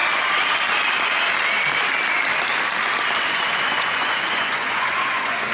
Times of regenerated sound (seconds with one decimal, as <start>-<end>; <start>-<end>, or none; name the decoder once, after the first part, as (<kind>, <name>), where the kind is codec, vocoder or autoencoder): 3.3-5.5 (vocoder, Vocos)